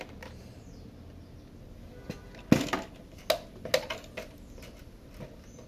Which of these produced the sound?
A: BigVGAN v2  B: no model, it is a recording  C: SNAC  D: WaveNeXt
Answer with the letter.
B